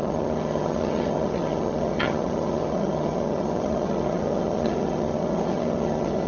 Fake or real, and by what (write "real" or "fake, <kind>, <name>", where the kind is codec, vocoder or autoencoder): fake, vocoder, HiFi-GAN